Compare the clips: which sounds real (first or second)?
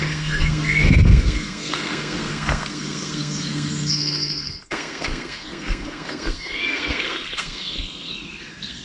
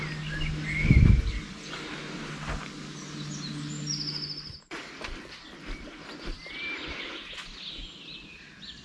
second